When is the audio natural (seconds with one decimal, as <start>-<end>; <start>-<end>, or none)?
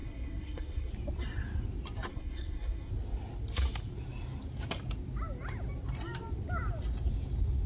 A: 0.9-2.1; 2.9-7.7